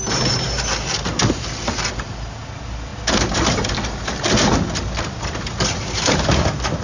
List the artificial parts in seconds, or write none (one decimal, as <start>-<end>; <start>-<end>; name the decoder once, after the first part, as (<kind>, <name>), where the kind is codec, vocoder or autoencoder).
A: none